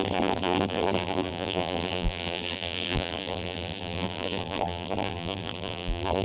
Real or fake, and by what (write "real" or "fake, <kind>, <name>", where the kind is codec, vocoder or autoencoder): fake, vocoder, BigVGAN v2